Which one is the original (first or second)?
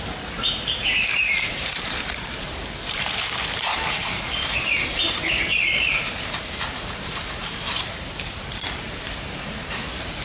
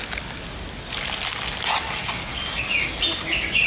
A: second